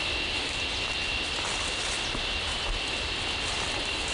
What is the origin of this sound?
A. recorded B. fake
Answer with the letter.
A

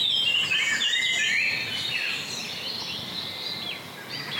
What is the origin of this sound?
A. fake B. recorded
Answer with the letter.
B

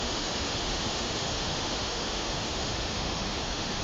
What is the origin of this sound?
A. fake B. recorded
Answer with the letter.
A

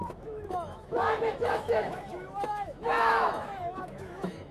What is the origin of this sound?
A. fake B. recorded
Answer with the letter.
A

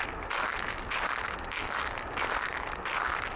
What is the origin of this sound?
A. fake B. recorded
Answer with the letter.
B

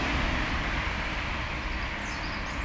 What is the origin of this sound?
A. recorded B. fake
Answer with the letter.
A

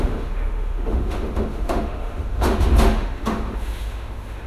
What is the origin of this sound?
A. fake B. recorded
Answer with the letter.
A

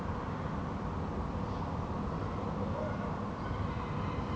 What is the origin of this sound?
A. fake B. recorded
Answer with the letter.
B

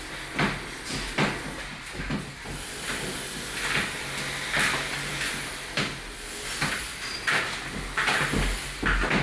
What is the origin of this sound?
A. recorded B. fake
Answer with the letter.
A